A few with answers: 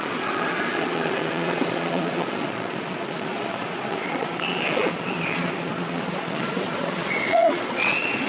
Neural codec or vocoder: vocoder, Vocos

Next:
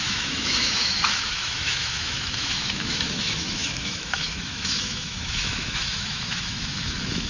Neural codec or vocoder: autoencoder, DAC-VAE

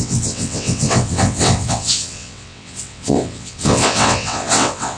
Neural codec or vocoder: vocoder, WaveNeXt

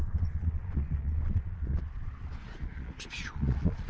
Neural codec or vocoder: vocoder, Vocos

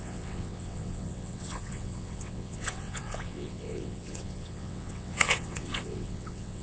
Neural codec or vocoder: vocoder, WaveNeXt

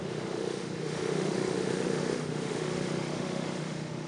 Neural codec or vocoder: autoencoder, DAC-VAE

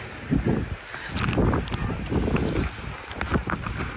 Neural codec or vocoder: none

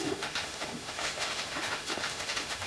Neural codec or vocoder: autoencoder, DAC-VAE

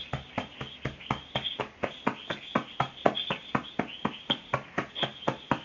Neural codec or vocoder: none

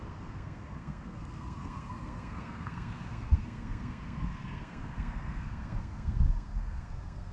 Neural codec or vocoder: codec, SNAC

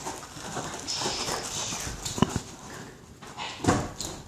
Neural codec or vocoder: vocoder, BigVGAN v2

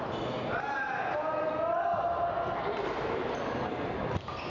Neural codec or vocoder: none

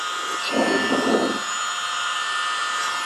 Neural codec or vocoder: none